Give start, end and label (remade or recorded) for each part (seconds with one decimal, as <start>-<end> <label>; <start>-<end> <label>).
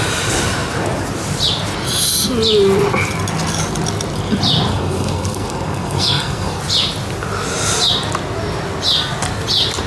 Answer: 0.0-4.7 recorded; 4.7-6.6 remade; 6.6-9.9 recorded